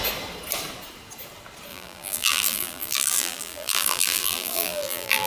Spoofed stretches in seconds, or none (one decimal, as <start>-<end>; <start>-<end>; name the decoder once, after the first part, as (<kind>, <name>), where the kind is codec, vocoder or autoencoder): 1.7-5.3 (vocoder, BigVGAN v2)